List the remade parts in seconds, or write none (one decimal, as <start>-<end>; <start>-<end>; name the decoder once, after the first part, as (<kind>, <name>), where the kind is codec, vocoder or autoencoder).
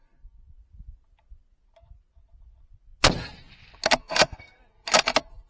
4.0-4.6 (codec, SNAC)